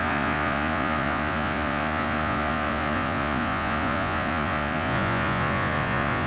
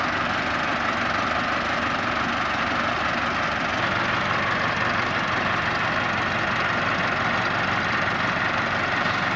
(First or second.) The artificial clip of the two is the first